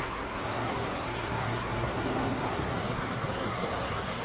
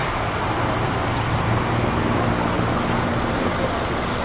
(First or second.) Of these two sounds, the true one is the second